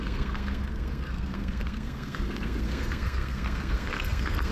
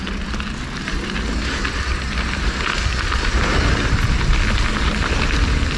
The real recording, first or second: second